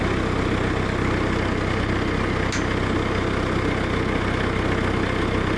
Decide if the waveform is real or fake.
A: real